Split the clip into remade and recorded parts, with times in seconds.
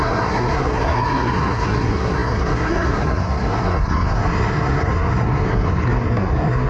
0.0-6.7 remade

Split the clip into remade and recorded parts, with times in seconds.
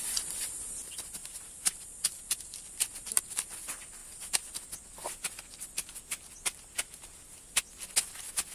0.0-5.5 recorded; 5.5-7.1 remade; 7.1-8.5 recorded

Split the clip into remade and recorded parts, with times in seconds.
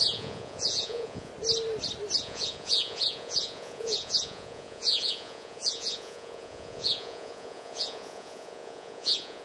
0.0-1.3 remade; 1.3-2.2 recorded; 2.2-9.4 remade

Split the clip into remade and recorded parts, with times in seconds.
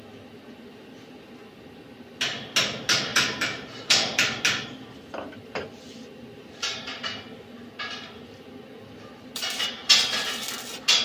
0.0-3.1 recorded; 3.1-4.3 remade; 4.3-11.0 recorded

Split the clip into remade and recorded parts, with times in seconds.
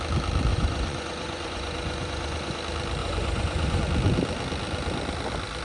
0.0-0.5 recorded; 0.5-2.6 remade; 2.6-3.0 recorded; 3.0-3.8 remade; 3.8-5.6 recorded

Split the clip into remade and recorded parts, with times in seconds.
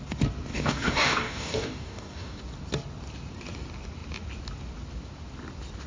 0.0-0.5 recorded; 0.5-2.4 remade; 2.4-5.9 recorded